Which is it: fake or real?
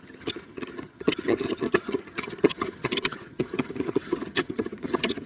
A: fake